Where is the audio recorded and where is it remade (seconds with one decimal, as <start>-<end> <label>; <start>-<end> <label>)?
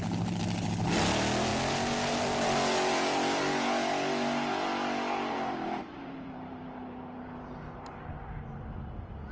0.0-5.8 recorded; 5.8-8.6 remade; 8.6-9.3 recorded